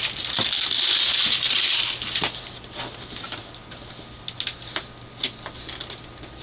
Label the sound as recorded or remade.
recorded